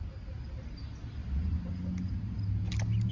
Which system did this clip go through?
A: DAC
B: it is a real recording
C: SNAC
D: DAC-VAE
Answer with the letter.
B